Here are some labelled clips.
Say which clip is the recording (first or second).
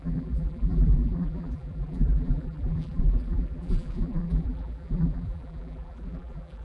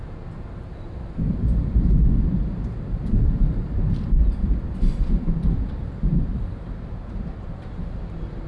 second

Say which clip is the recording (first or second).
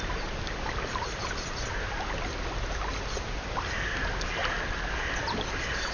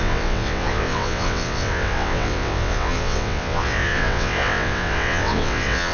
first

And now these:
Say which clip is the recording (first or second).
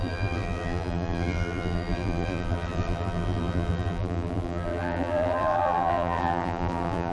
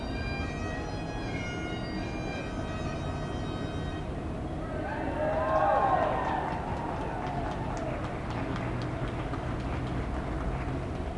second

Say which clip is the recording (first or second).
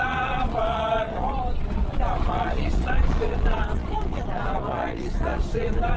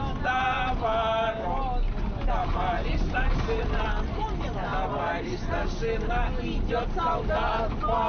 second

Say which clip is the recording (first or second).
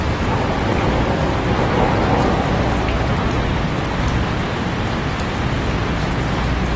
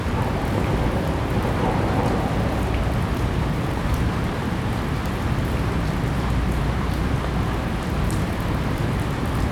first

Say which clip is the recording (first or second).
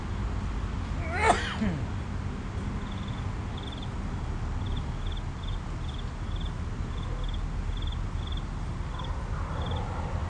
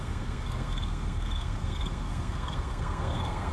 first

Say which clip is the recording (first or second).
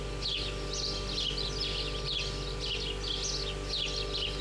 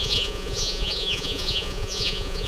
first